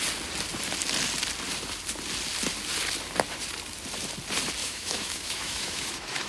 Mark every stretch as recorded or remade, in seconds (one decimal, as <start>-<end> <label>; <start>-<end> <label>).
0.0-4.6 recorded; 4.6-6.3 remade